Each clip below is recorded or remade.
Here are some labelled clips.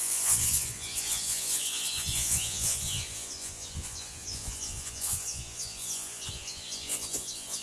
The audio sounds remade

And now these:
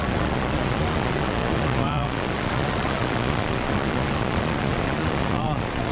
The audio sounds remade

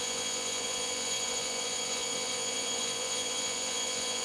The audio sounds remade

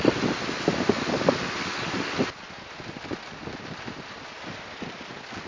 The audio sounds recorded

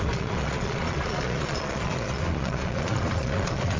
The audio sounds remade